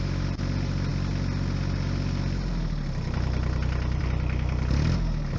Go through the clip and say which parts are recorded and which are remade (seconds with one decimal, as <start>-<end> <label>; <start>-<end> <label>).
0.0-5.4 recorded